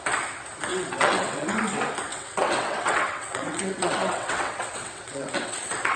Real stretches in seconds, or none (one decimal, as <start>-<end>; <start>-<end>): 0.0-0.7; 1.6-2.1